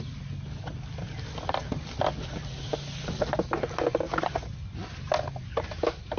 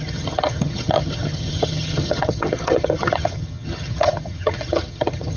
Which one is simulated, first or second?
second